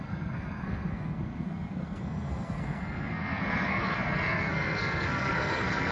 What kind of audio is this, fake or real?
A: fake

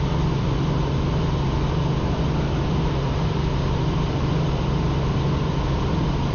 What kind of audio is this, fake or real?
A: real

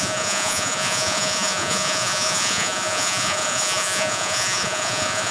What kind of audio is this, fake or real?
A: fake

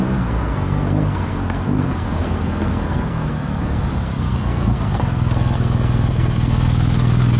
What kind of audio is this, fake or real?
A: fake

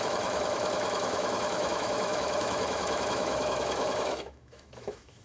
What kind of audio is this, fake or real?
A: fake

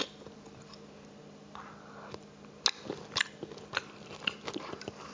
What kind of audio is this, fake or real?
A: real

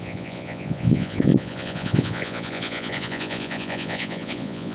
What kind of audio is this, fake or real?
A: fake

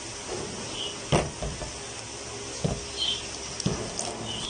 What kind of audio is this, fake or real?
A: real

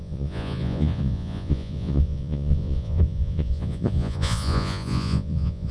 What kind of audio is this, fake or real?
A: fake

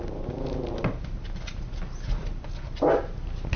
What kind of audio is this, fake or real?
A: real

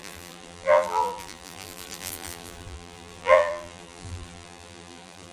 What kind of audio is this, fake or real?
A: fake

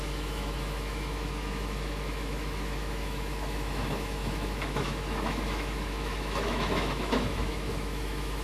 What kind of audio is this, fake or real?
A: fake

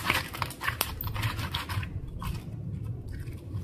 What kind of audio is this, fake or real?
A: real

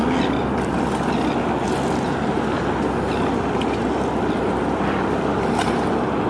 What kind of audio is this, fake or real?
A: real